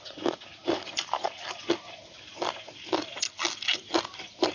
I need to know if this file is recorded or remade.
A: recorded